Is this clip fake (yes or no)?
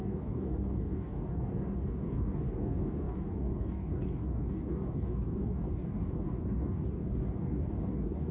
yes